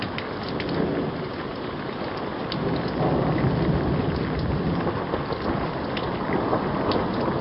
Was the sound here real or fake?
real